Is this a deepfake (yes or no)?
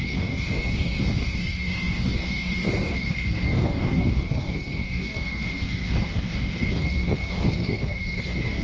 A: yes